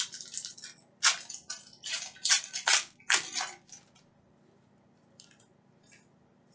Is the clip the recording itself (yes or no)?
yes